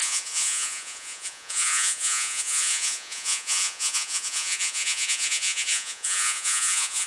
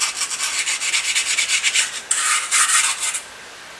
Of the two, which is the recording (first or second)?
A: second